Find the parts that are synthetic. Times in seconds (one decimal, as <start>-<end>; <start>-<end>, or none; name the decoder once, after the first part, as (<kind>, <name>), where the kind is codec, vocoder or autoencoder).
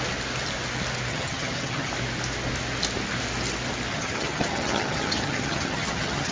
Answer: 1.1-1.9 (vocoder, HiFi-GAN); 3.9-6.3